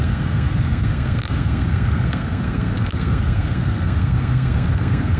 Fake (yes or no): yes